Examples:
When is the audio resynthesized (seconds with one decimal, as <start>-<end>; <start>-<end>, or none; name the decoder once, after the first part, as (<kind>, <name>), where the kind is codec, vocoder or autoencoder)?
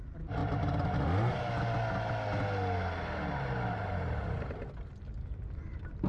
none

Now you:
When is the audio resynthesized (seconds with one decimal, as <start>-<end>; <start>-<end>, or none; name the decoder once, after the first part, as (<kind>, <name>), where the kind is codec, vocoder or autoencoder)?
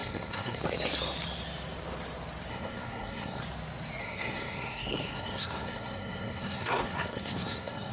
0.0-0.6 (codec, SNAC); 2.5-3.4; 4.0-7.9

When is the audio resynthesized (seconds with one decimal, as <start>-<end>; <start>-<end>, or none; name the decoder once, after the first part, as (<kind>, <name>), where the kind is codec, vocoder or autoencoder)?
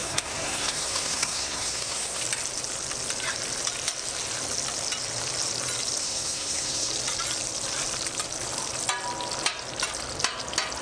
0.0-2.2 (codec, SNAC); 6.0-6.9